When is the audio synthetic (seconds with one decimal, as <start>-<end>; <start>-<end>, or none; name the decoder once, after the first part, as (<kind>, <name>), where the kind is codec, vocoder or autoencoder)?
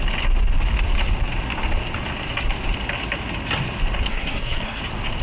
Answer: 4.1-4.8 (codec, SNAC)